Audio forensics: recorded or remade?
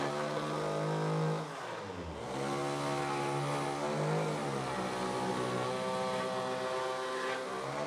recorded